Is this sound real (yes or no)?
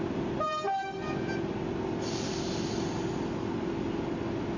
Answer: yes